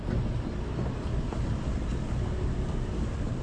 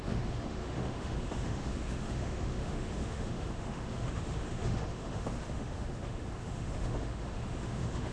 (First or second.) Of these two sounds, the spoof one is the second